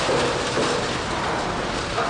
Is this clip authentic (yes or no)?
yes